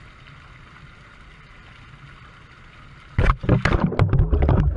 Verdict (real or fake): real